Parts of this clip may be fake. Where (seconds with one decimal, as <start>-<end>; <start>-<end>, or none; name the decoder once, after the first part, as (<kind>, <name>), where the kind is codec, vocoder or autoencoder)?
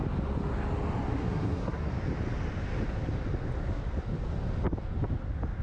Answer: 1.1-1.9 (codec, SNAC)